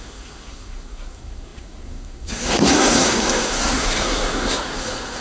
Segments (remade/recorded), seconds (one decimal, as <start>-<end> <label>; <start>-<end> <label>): 0.0-5.2 remade